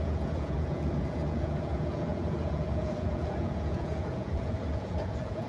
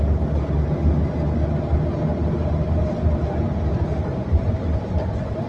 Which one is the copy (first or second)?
first